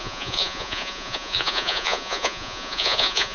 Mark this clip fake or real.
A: fake